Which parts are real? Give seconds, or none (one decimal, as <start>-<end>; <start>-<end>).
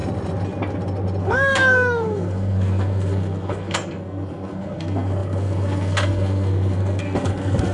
0.0-1.2